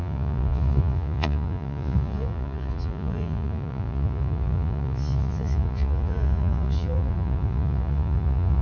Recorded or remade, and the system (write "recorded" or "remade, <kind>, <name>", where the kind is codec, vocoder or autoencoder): remade, vocoder, Vocos